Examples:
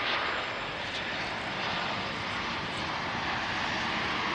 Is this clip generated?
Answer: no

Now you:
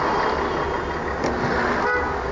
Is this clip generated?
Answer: no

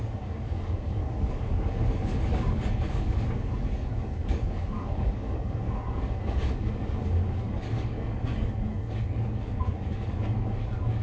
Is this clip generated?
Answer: yes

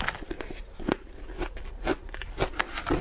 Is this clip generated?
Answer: no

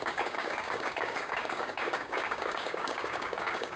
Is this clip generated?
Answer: yes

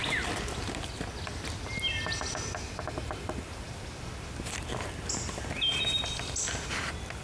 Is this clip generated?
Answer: no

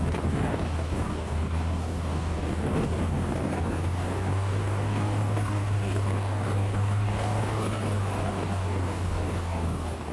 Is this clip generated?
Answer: yes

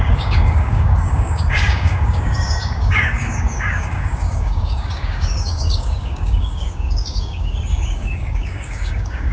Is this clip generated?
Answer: yes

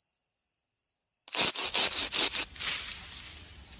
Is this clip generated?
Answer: no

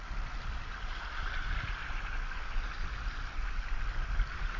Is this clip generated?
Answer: no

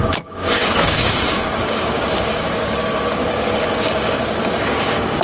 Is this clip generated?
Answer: yes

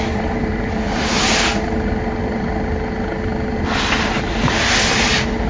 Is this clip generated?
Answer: no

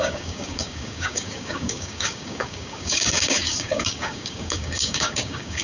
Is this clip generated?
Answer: yes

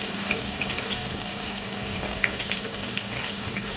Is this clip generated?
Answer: yes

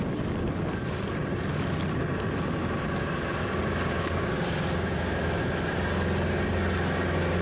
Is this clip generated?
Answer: no